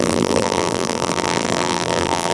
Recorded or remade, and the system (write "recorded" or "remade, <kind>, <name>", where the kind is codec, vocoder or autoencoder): remade, vocoder, BigVGAN v2